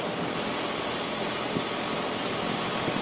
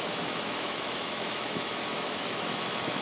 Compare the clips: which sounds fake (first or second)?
second